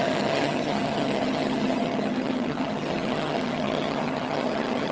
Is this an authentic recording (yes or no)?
no